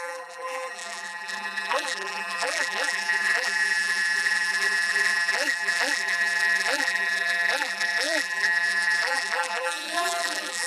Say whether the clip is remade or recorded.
remade